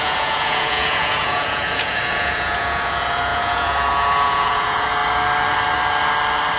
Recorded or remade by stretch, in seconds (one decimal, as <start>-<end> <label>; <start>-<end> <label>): 0.0-5.0 remade; 5.0-6.6 recorded